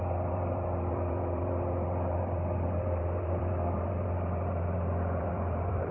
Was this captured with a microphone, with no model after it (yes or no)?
no